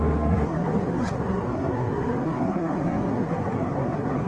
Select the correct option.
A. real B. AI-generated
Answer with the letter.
B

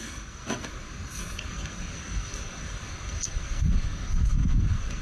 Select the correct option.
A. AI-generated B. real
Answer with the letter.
A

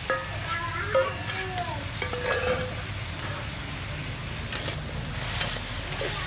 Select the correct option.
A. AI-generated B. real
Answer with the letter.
B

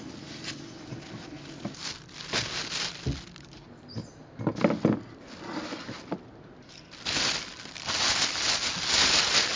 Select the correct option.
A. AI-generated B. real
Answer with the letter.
B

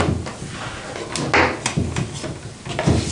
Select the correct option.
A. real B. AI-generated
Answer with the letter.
A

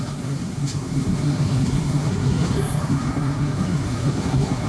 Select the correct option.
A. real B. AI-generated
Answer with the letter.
B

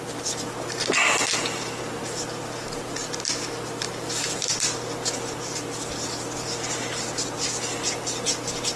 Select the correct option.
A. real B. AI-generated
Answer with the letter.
A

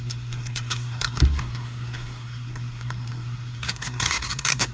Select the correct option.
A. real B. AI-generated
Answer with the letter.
B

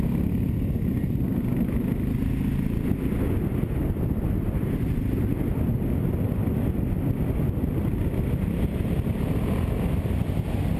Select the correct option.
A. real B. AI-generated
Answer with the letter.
A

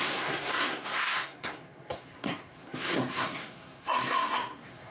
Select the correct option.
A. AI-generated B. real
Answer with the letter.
A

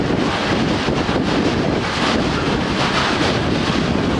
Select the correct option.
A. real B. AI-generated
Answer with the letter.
A